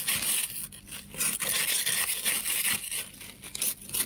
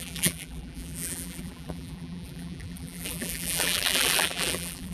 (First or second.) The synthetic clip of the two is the second